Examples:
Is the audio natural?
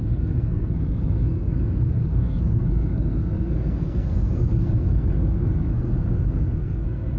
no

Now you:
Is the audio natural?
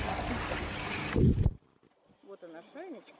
yes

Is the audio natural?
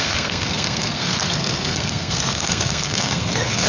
no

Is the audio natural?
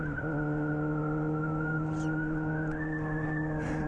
yes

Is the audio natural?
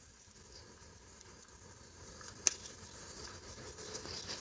yes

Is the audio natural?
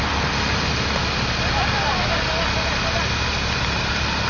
yes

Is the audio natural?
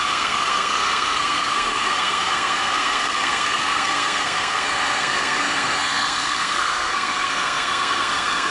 no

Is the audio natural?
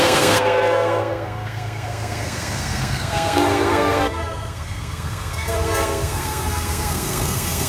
no